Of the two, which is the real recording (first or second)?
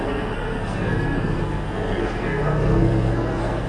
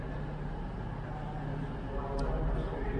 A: second